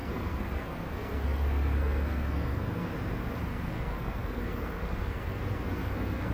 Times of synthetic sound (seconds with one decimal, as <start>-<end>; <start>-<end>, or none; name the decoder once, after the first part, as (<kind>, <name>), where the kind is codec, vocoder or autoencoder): 0.0-2.9 (codec, SNAC); 3.4-6.3